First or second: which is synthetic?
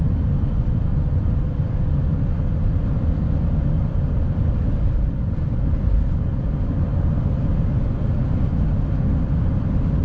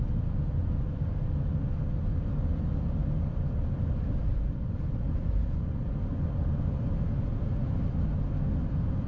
first